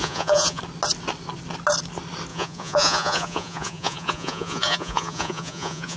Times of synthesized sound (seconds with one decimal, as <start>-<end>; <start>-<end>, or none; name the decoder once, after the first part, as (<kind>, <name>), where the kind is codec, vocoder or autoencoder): 0.0-0.6 (vocoder, Vocos); 2.3-6.0